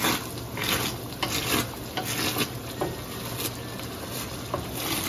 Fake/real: real